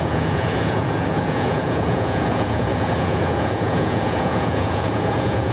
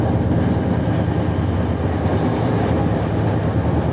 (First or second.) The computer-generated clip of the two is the first